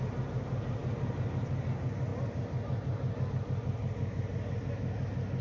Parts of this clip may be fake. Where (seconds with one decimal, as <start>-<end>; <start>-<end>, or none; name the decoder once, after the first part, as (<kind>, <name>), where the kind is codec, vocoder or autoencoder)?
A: none